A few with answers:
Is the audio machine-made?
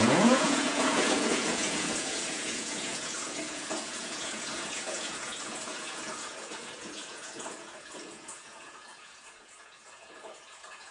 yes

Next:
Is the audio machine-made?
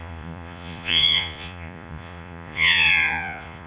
yes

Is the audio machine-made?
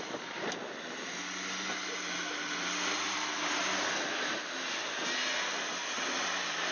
no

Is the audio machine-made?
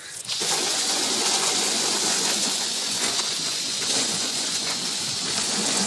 yes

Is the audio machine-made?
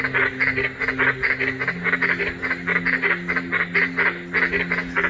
no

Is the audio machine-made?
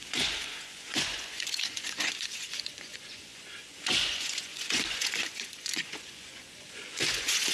yes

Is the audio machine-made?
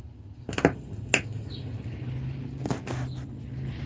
no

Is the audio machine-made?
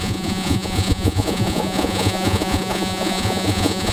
yes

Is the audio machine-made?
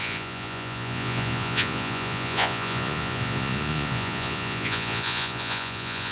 yes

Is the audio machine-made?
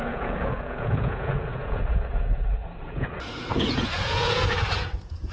yes